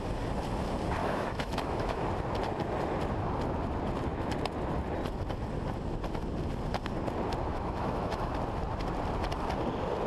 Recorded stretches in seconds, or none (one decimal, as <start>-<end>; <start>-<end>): 0.0-1.0; 2.0-7.5; 8.3-10.1